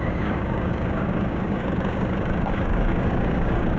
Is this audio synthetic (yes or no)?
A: yes